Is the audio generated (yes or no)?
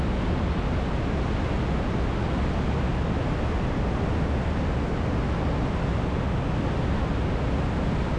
no